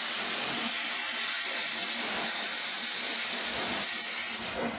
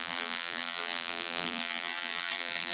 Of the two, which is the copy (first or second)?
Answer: second